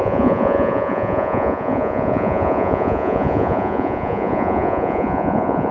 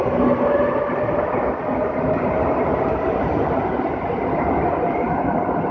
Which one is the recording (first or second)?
second